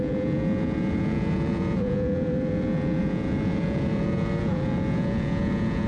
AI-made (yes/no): yes